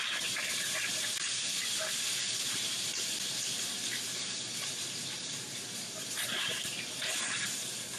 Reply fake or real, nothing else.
fake